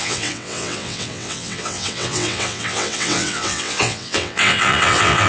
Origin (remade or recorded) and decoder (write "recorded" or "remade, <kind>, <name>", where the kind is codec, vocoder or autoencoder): remade, vocoder, WaveNeXt